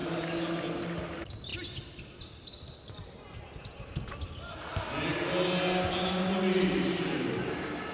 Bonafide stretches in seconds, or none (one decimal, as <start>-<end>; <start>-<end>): 0.0-7.9